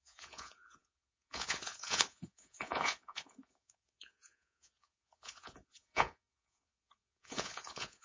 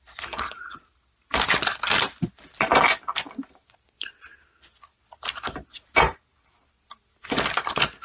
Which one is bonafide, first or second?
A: second